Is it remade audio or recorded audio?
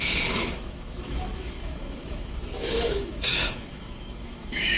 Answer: remade